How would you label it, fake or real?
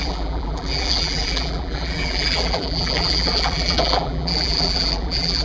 fake